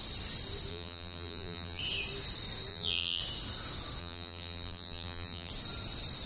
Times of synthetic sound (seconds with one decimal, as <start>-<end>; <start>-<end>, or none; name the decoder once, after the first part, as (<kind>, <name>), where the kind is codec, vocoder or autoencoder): 0.7-1.8 (vocoder, BigVGAN v2); 2.7-3.2; 4.0-5.5